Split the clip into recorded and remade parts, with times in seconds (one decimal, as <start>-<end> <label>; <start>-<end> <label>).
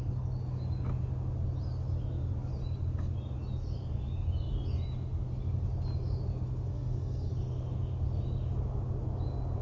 0.0-6.7 recorded; 6.7-7.3 remade; 7.3-9.6 recorded